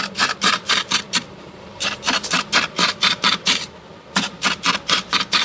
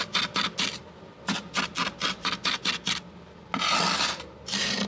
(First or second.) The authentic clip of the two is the second